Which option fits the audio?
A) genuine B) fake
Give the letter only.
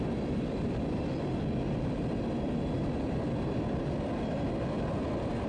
A